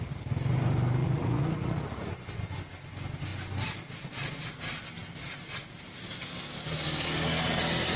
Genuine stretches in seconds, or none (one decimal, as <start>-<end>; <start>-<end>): 0.0-1.0; 2.1-8.0